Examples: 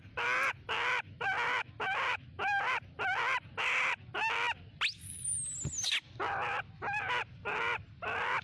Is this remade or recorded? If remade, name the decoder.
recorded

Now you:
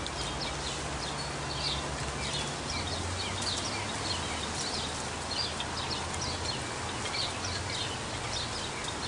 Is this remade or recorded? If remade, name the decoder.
recorded